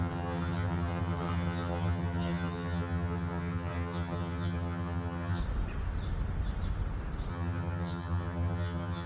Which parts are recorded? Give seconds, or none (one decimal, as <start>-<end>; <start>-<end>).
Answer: 5.4-7.3